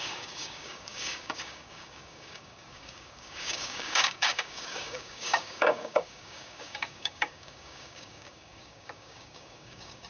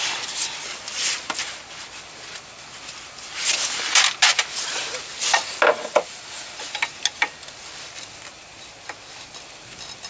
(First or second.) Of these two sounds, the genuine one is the second